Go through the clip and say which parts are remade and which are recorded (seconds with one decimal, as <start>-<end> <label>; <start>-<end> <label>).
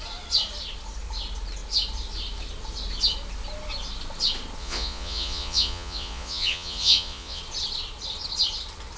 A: 0.0-4.6 recorded; 4.6-7.4 remade; 7.4-9.0 recorded